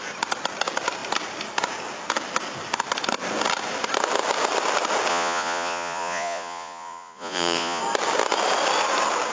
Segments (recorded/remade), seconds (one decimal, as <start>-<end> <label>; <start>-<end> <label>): 0.0-5.1 recorded; 5.1-7.8 remade; 7.8-9.3 recorded